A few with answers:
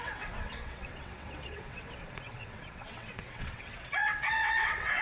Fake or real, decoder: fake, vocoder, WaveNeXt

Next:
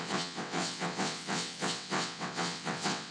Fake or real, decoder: fake, vocoder, WaveNeXt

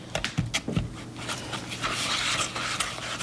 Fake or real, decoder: real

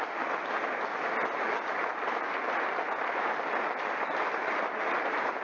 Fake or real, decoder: real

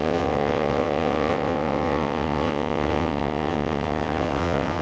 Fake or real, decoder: fake, vocoder, WaveNeXt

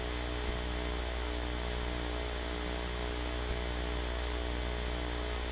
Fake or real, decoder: real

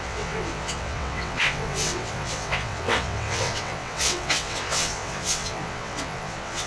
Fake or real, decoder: fake, vocoder, WaveNeXt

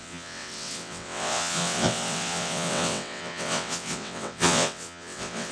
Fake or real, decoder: fake, vocoder, WaveNeXt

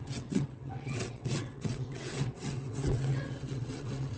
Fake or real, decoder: fake, vocoder, WaveNeXt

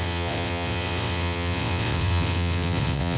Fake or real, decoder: fake, vocoder, WaveNeXt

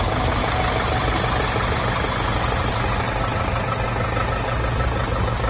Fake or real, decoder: real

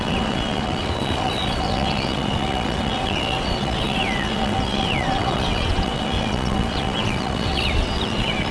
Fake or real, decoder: fake, vocoder, WaveNeXt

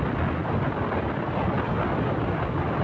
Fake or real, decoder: real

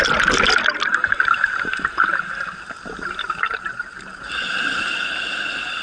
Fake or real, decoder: real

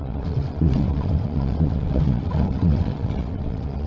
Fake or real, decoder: fake, vocoder, WaveNeXt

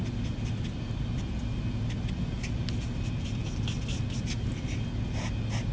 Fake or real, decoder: real